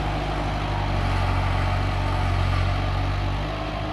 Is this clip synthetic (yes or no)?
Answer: no